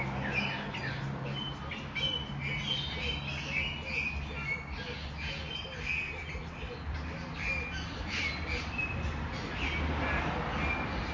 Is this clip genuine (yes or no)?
yes